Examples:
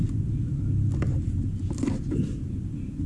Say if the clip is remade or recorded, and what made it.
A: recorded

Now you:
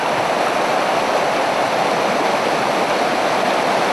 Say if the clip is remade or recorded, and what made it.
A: recorded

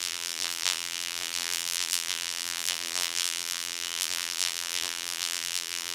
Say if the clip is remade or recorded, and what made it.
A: remade, vocoder, BigVGAN v2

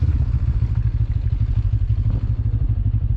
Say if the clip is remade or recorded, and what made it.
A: recorded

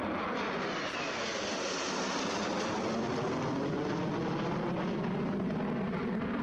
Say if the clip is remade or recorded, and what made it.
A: recorded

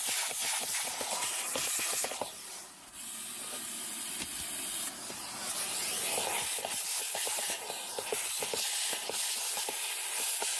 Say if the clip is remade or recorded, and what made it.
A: recorded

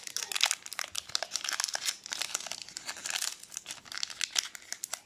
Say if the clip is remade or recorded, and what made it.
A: recorded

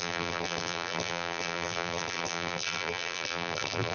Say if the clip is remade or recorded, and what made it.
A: remade, vocoder, BigVGAN v2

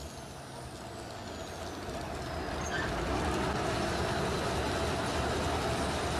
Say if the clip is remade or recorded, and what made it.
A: recorded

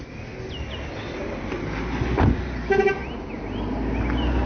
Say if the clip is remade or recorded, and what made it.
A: recorded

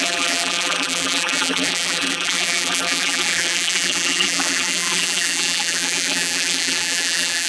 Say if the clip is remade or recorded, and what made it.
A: remade, vocoder, BigVGAN v2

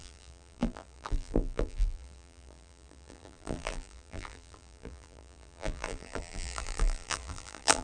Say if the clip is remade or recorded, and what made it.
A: remade, vocoder, BigVGAN v2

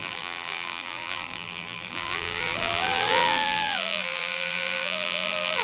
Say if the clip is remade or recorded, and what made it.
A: remade, vocoder, BigVGAN v2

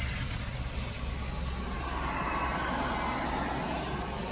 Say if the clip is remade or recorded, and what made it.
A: recorded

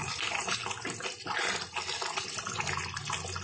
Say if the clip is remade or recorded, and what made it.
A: recorded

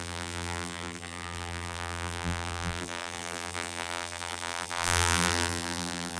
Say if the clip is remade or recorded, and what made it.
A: remade, vocoder, BigVGAN v2